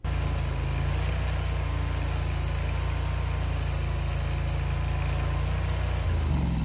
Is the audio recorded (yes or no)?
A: yes